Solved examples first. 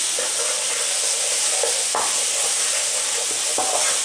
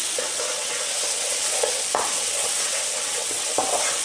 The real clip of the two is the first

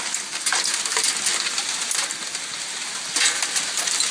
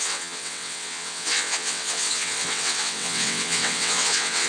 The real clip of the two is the first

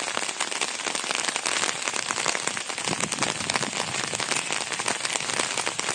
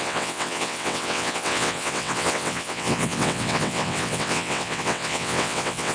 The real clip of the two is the first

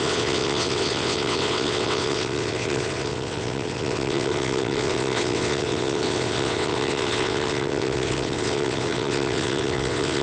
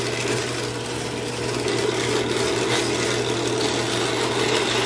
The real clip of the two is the second